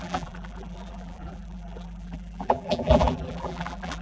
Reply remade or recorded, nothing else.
remade